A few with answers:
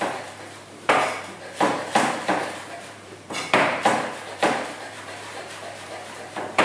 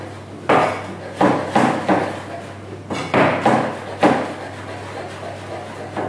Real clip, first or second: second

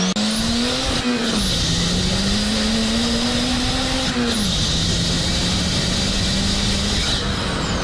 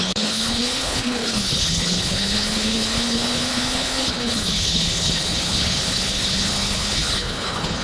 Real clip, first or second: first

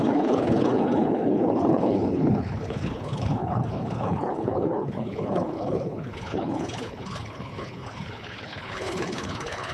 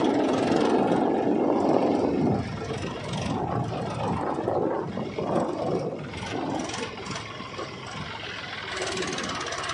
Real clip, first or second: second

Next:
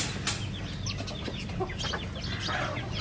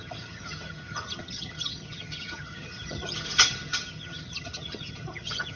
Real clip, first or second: first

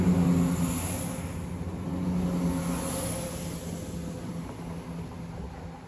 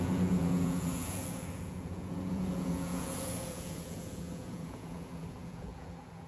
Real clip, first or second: first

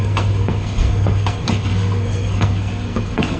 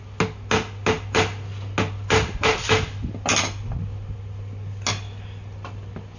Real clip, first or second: second